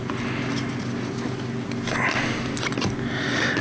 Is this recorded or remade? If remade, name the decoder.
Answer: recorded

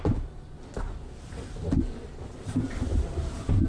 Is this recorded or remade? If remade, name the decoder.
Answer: recorded